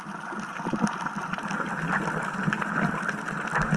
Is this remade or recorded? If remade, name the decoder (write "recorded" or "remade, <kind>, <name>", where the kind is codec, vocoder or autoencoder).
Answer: recorded